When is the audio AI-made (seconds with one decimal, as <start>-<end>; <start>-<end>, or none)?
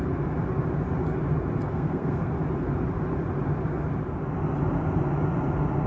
1.7-2.3